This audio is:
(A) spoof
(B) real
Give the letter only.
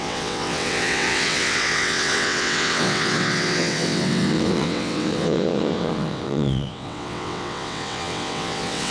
A